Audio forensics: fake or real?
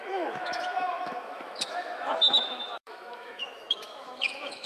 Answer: fake